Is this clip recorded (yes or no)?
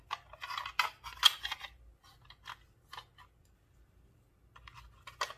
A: yes